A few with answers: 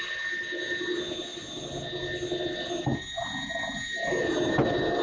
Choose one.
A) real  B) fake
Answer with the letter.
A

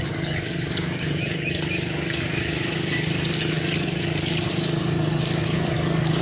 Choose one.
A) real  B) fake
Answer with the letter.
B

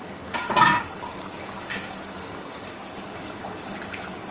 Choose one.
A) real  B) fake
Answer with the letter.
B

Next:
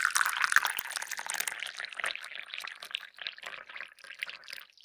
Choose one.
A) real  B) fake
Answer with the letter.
A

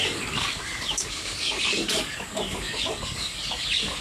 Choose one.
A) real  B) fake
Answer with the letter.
B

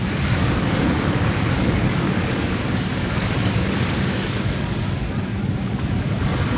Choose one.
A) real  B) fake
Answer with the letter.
B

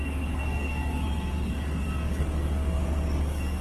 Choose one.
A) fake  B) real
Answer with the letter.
A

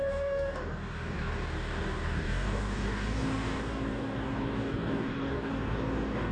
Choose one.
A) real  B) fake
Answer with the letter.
B